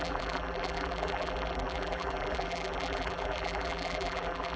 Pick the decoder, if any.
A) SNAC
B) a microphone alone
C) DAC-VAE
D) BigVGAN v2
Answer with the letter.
D